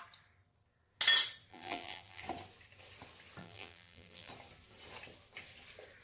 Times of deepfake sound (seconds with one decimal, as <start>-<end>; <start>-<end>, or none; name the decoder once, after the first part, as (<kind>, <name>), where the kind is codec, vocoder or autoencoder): 1.5-2.2 (vocoder, BigVGAN v2); 3.4-4.3